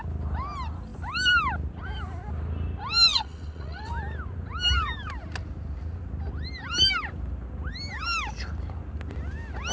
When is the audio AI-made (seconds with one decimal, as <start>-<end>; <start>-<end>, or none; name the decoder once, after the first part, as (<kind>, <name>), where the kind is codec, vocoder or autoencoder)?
3.1-3.9 (vocoder, WaveNeXt)